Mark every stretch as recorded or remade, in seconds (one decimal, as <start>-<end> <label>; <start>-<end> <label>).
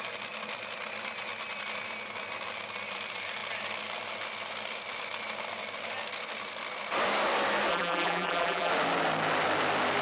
0.0-7.7 recorded; 7.7-8.7 remade; 8.7-10.0 recorded